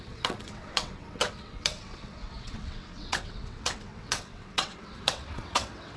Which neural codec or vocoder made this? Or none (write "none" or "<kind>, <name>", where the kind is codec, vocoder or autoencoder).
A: vocoder, WaveNeXt